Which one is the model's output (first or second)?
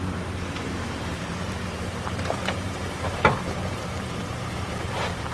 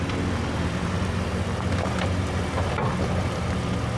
first